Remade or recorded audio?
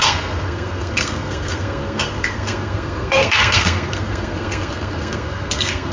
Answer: remade